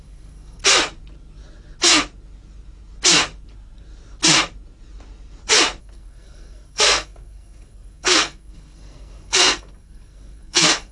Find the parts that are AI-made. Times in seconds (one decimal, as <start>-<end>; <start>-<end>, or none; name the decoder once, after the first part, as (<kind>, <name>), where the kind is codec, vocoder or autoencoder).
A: 0.0-0.6 (codec, SNAC); 5.8-10.9